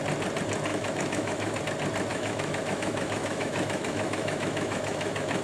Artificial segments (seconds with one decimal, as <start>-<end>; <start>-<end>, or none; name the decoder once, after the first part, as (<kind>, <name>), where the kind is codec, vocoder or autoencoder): 0.7-1.6 (autoencoder, DAC-VAE); 2.1-5.4